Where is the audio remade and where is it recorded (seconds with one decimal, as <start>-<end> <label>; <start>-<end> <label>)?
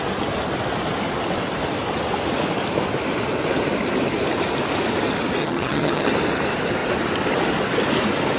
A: 0.0-5.4 recorded; 5.4-6.1 remade; 6.1-8.4 recorded